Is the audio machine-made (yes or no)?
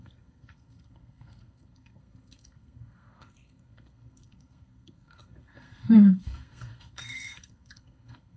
yes